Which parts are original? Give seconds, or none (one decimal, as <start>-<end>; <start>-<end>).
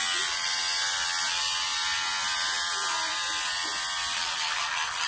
none